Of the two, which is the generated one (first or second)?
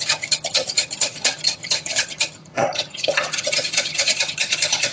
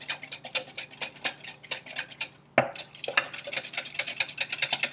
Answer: first